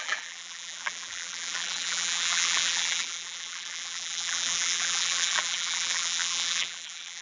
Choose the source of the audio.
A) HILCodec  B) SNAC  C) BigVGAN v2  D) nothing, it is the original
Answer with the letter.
C